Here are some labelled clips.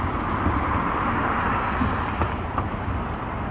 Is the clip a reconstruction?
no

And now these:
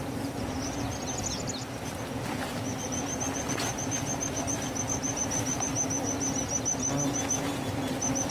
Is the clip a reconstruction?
no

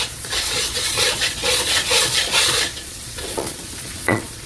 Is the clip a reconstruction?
yes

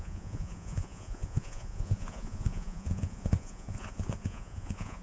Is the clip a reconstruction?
yes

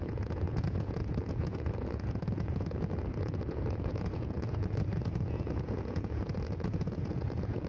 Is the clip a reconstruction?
yes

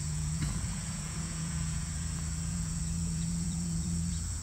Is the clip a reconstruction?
yes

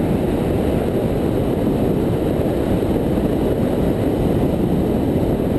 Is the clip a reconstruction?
no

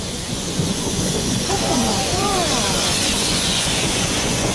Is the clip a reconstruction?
yes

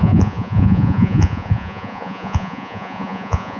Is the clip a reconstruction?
yes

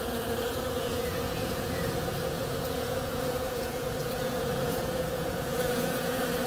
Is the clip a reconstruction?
yes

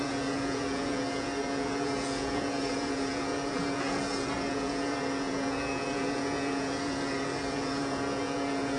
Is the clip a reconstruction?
yes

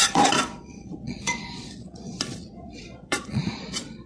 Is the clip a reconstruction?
yes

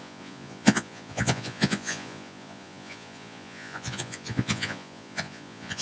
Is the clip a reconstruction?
yes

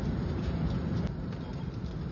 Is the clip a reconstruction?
no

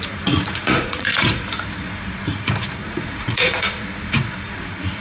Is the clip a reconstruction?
yes